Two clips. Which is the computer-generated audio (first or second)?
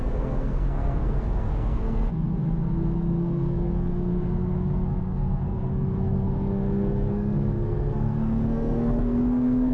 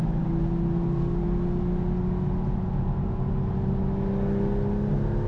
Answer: first